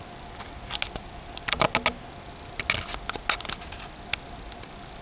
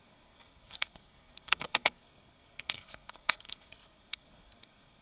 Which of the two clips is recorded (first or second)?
first